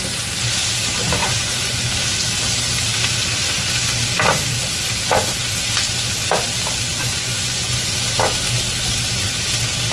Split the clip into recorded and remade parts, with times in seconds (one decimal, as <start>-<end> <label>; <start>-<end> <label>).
0.0-1.2 recorded; 1.2-1.9 remade; 1.9-6.9 recorded; 6.9-7.9 remade; 7.9-9.9 recorded